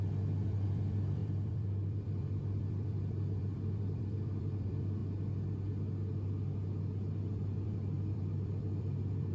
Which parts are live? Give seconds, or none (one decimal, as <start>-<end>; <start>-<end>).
5.0-7.2